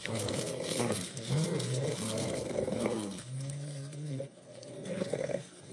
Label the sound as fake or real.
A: fake